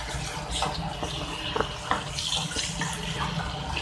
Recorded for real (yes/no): yes